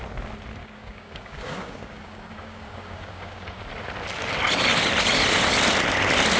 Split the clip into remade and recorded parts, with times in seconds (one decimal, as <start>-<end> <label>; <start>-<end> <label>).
0.0-0.6 recorded; 0.6-3.6 remade; 3.6-6.4 recorded